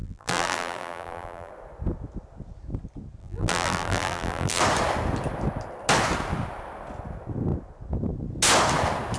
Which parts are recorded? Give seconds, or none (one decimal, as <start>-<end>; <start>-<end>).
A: 1.5-3.2; 4.6-9.2